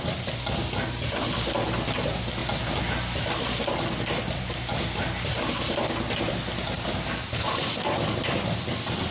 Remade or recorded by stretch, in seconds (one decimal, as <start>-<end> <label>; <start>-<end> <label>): 0.0-9.1 recorded